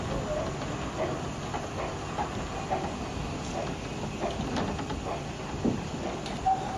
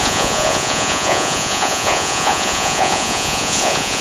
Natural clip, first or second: first